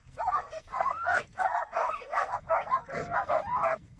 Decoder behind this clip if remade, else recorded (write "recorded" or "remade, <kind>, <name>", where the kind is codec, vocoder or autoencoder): remade, codec, SNAC